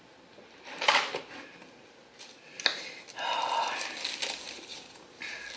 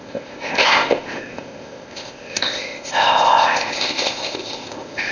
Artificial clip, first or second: second